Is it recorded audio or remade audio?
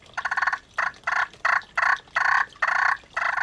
recorded